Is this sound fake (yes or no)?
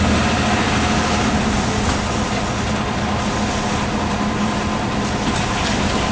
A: no